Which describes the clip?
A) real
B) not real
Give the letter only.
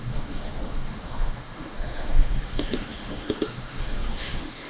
B